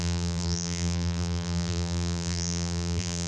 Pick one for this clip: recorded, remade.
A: remade